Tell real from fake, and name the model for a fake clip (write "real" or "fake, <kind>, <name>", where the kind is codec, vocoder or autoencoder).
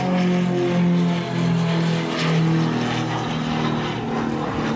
real